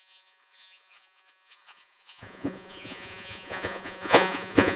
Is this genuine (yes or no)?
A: no